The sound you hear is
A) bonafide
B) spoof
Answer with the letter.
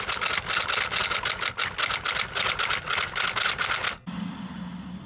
A